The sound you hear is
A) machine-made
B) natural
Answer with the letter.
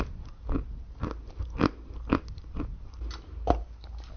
B